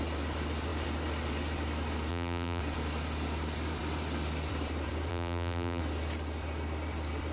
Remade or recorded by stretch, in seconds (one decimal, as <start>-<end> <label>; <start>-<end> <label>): 0.0-2.1 recorded; 2.1-2.6 remade; 2.6-5.1 recorded; 5.1-5.8 remade; 5.8-7.3 recorded